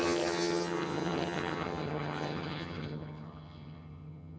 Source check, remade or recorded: remade